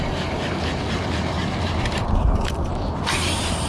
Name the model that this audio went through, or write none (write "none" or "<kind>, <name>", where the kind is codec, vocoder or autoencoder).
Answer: vocoder, BigVGAN v2